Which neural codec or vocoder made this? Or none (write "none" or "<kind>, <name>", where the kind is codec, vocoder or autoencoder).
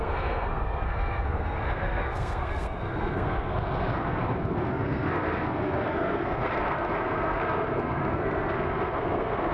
codec, SNAC